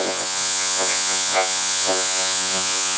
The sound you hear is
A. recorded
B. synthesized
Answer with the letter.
B